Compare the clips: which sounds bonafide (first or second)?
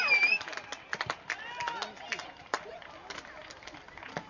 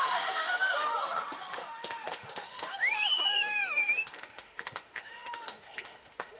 first